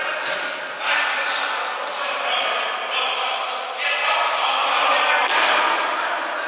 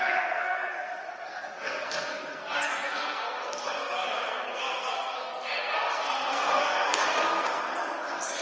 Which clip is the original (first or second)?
first